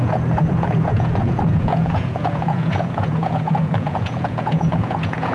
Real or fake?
fake